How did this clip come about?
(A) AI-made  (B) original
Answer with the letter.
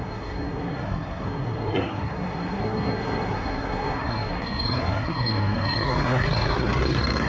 A